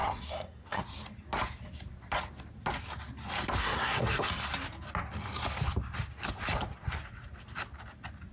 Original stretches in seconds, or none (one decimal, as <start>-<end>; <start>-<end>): 0.8-3.6; 4.3-8.3